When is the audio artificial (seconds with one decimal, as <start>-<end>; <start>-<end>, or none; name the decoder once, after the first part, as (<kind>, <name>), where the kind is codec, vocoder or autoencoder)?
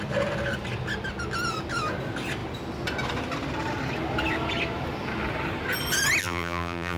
6.2-7.0 (vocoder, BigVGAN v2)